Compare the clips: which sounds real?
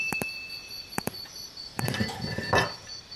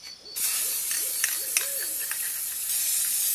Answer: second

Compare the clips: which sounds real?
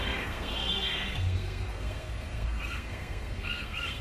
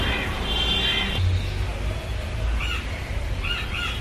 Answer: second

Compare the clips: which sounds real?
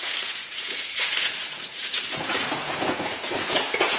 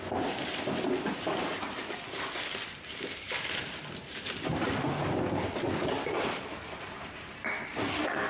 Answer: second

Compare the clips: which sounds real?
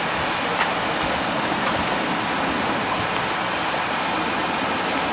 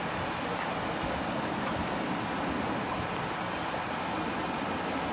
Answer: first